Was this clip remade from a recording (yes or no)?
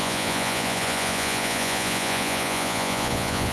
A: yes